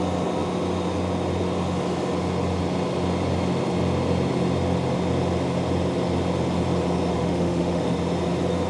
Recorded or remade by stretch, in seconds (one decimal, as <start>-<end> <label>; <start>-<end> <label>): 0.0-7.1 recorded; 7.1-7.8 remade; 7.8-8.7 recorded